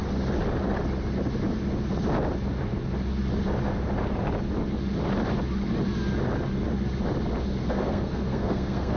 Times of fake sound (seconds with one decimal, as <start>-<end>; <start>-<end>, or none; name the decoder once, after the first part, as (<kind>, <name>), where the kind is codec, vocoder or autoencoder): 7.6-9.0 (codec, SNAC)